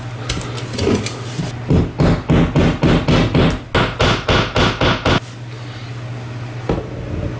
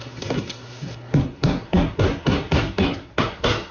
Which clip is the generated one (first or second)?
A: second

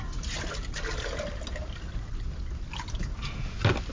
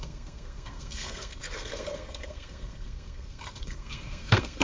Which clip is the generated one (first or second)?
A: second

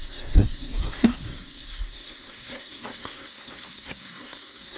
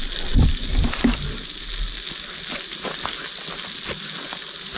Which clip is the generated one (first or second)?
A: first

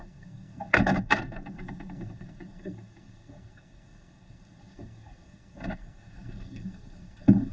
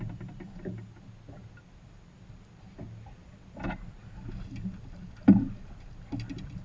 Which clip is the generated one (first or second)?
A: first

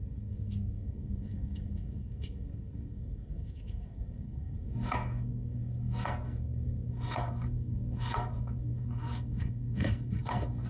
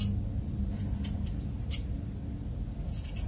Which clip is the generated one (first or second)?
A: first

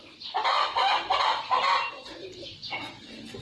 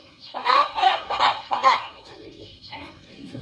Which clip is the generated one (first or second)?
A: second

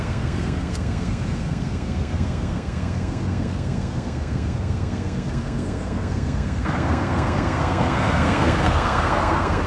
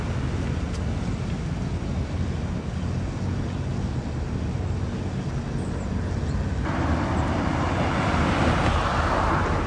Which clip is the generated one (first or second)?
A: first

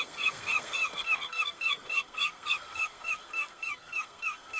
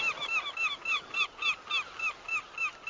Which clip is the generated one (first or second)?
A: first